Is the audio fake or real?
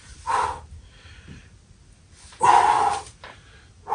real